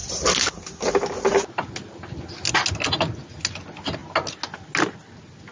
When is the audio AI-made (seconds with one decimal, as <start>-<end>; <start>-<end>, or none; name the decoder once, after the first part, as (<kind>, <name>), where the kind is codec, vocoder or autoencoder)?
none